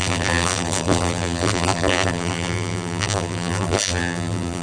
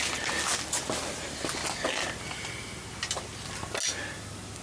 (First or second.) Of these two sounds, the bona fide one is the second